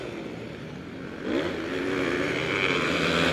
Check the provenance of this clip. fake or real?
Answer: real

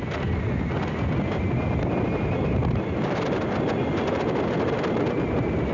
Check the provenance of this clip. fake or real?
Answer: real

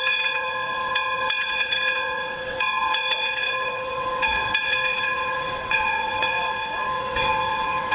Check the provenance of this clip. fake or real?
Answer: fake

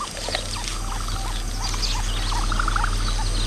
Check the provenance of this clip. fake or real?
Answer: real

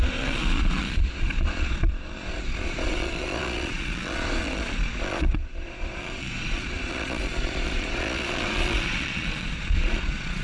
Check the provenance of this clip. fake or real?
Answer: fake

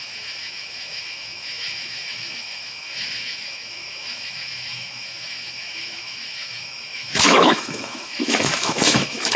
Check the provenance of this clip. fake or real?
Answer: fake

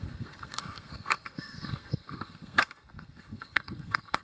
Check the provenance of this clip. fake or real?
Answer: fake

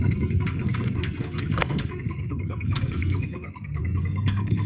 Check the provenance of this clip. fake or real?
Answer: fake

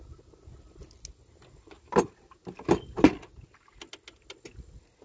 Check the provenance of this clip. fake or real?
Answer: real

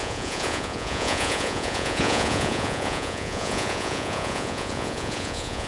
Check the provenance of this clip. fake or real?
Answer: fake